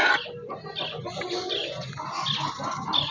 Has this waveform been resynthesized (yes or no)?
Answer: no